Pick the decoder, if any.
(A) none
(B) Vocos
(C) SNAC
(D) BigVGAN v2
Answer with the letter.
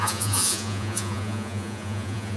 B